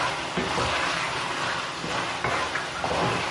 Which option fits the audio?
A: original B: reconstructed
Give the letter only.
A